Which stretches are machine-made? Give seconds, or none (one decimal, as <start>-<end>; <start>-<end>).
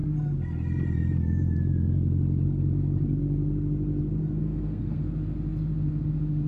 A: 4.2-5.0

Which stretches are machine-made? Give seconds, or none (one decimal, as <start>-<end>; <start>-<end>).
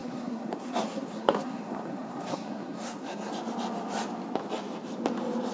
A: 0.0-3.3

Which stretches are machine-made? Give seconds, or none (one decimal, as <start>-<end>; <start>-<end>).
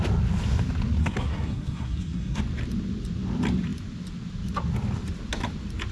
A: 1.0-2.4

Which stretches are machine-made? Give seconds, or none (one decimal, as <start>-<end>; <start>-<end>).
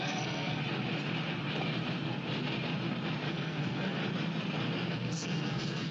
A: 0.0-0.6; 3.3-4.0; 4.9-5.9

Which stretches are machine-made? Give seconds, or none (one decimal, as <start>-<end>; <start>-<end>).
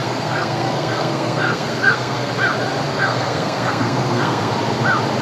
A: 0.0-2.3; 2.9-4.5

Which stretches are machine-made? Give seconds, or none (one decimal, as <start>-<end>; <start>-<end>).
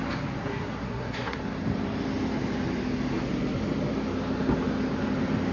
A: 0.4-1.4